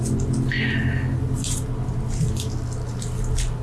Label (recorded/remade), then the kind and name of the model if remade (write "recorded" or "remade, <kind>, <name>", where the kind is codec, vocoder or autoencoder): recorded